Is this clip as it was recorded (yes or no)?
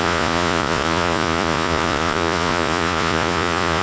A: no